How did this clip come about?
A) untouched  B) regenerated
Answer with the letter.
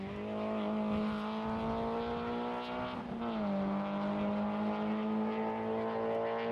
A